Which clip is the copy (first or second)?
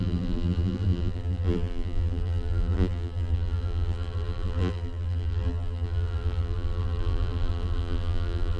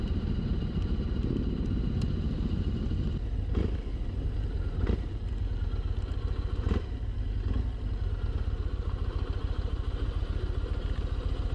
first